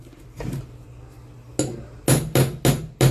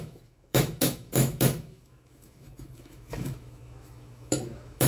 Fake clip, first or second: second